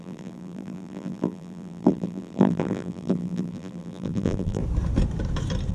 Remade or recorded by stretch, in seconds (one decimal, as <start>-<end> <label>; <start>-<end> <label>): 0.0-4.6 remade; 4.6-5.7 recorded